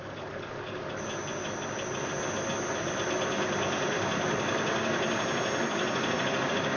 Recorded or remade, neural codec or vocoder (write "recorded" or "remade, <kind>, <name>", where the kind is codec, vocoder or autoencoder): recorded